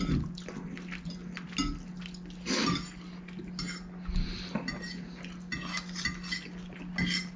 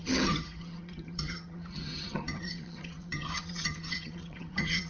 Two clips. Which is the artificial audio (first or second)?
second